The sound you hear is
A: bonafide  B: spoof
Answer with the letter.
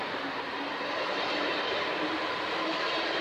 B